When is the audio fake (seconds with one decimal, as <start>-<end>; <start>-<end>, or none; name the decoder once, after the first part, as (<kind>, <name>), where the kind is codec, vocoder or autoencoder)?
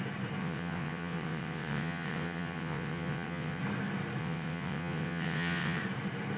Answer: 0.4-3.6 (vocoder, WaveNeXt); 4.2-5.8